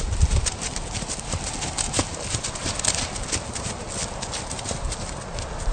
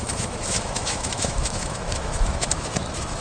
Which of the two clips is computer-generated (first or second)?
second